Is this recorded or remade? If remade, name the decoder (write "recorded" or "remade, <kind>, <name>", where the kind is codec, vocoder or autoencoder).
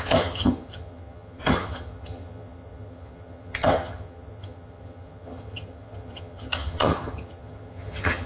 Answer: remade, vocoder, HiFi-GAN